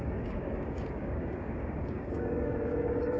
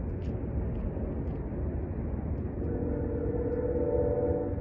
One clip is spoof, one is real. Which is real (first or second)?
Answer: second